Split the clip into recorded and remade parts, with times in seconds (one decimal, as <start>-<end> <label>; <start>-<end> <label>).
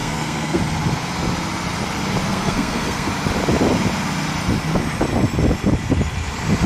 0.0-0.6 remade; 0.6-2.3 recorded; 2.3-3.1 remade; 3.1-6.7 recorded